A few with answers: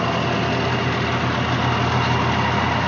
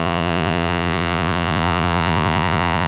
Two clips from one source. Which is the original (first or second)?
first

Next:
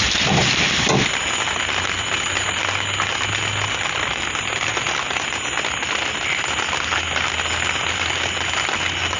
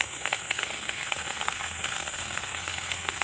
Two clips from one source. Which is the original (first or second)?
first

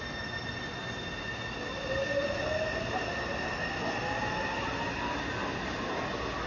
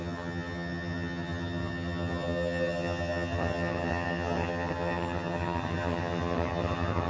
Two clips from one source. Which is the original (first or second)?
first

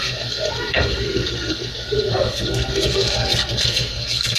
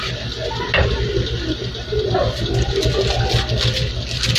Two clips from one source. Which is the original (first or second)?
second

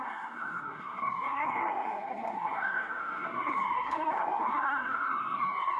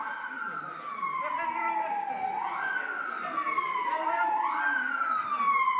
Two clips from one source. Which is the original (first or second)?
second